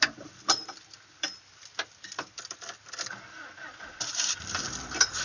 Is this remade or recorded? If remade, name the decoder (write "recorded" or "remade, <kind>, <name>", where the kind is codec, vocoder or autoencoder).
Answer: remade, vocoder, BigVGAN v2